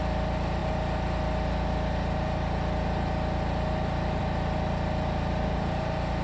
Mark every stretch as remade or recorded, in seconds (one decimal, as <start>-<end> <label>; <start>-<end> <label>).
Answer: 0.0-6.2 recorded